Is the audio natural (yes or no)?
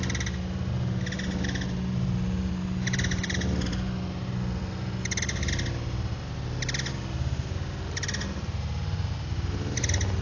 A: yes